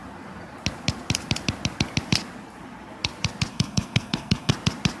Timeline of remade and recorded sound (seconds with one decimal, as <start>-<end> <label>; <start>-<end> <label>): 0.0-3.5 recorded; 3.5-4.5 remade; 4.5-5.0 recorded